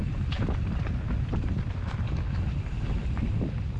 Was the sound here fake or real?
fake